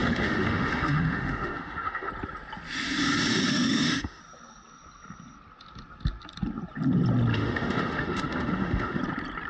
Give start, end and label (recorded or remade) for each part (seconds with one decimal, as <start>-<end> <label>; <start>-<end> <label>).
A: 0.0-2.1 remade; 2.1-3.3 recorded; 3.3-4.2 remade; 4.2-7.3 recorded; 7.3-9.0 remade; 9.0-9.5 recorded